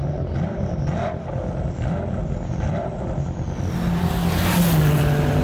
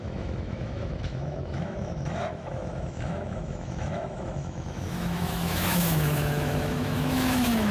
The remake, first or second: second